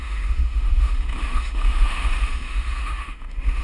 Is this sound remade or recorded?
remade